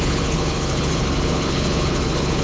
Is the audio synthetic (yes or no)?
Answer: yes